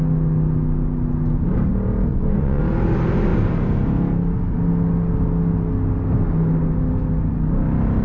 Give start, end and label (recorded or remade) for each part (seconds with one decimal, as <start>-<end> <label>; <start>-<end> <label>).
0.0-2.1 recorded; 2.1-2.6 remade; 2.6-8.0 recorded